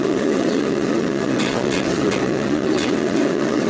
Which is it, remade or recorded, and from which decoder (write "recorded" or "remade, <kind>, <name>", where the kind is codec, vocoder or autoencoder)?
remade, vocoder, WaveNeXt